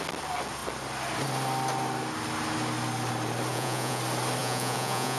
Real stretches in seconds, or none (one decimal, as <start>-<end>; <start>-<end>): 0.0-3.5; 4.0-4.4

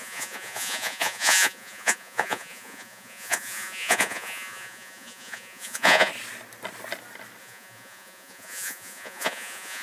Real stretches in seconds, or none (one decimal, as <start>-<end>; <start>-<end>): 6.1-7.4

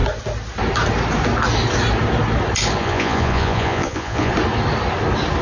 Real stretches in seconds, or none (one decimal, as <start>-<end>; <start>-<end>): 0.0-2.8; 4.3-5.4

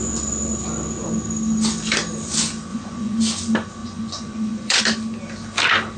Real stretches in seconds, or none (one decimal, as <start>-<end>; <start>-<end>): 0.0-2.7; 3.2-3.8; 4.8-6.0

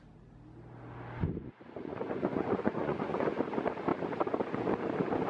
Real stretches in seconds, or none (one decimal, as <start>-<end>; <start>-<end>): 0.0-1.4; 3.4-5.3

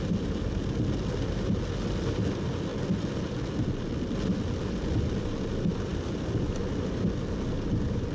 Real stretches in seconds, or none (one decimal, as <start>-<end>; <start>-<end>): 0.0-8.1

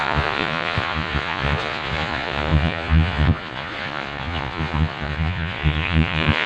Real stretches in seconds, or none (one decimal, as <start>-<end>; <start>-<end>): none